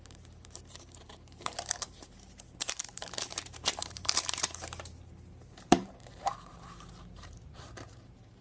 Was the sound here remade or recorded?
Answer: remade